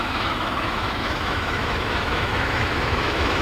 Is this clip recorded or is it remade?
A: remade